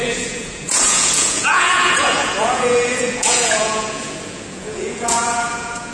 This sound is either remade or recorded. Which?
remade